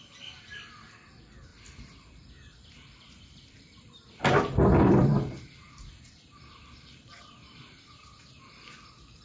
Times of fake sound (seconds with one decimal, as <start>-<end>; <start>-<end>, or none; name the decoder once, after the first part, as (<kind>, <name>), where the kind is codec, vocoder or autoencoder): 1.5-6.0 (vocoder, BigVGAN v2)